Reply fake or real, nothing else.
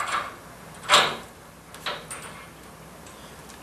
real